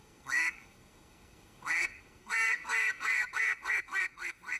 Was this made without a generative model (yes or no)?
no